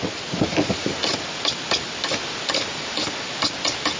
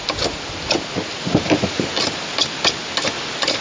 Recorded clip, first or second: second